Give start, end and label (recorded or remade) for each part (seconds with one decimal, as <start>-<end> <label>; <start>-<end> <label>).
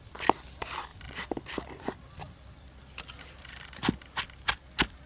0.0-0.9 remade; 0.9-2.1 recorded; 2.1-3.8 remade; 3.8-4.4 recorded; 4.4-5.1 remade